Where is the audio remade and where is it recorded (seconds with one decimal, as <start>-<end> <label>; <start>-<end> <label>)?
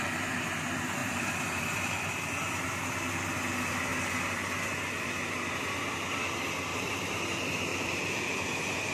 0.0-1.0 recorded; 1.0-1.6 remade; 1.6-6.7 recorded; 6.7-7.2 remade; 7.2-7.7 recorded; 7.7-8.2 remade; 8.2-8.9 recorded